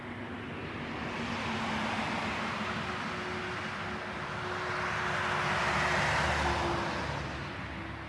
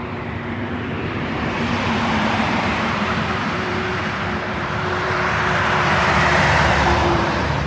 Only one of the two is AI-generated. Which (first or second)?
second